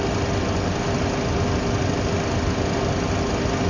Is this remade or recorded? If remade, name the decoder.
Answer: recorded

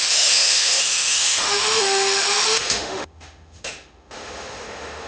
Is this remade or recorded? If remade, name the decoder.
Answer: remade, autoencoder, DAC-VAE